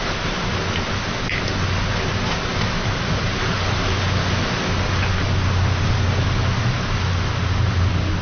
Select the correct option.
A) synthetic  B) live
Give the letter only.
B